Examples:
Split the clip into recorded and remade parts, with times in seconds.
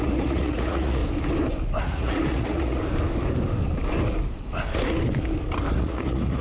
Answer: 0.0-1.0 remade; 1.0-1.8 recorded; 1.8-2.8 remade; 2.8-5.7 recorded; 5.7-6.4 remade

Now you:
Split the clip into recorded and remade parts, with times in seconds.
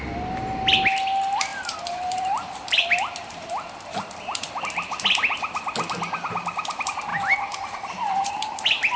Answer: 0.0-1.5 recorded; 1.5-4.0 remade; 4.0-7.1 recorded; 7.1-8.3 remade; 8.3-9.0 recorded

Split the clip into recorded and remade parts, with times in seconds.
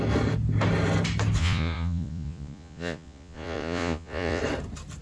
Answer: 0.0-1.4 recorded; 1.4-4.4 remade; 4.4-5.0 recorded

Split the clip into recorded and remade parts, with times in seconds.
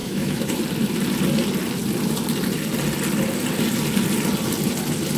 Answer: 0.0-0.6 remade; 0.6-5.2 recorded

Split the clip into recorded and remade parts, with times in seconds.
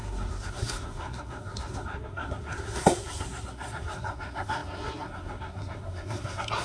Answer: 0.0-6.6 remade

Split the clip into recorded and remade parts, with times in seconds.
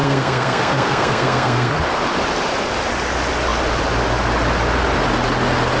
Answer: 0.0-1.7 remade; 1.7-5.8 recorded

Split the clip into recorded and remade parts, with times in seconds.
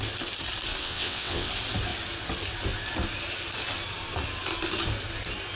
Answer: 0.0-0.8 recorded; 0.8-1.5 remade; 1.5-5.6 recorded